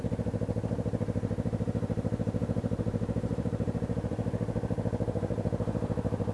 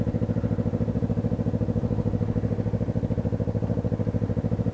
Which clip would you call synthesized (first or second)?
first